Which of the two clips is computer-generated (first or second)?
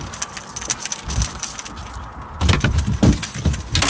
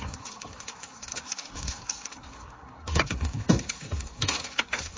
second